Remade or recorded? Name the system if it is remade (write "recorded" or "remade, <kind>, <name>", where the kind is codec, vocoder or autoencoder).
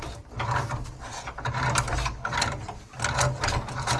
recorded